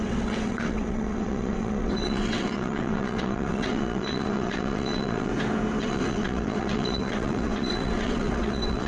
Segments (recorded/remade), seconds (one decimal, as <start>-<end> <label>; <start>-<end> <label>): 0.0-5.3 remade; 5.3-5.8 recorded; 5.8-8.9 remade